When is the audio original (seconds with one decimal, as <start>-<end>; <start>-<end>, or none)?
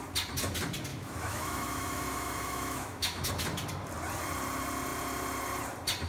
0.0-0.9; 3.3-6.1